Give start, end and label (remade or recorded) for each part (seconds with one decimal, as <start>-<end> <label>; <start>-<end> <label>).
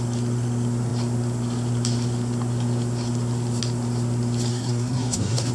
0.0-4.5 recorded; 4.5-5.5 remade